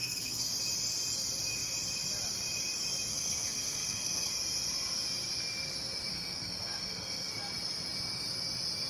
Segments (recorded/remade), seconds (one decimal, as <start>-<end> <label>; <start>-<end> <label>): 0.0-0.5 remade; 0.5-3.1 recorded; 3.1-4.3 remade; 4.3-6.1 recorded; 6.1-7.3 remade; 7.3-8.9 recorded